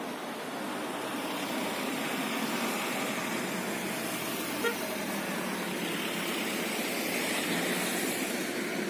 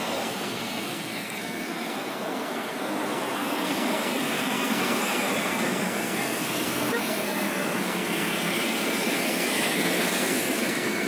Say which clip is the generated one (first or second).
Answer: second